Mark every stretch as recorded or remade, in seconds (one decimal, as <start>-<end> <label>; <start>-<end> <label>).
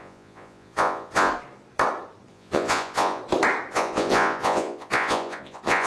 0.0-1.3 remade; 1.3-2.3 recorded; 2.3-3.2 remade; 3.2-3.7 recorded; 3.7-5.9 remade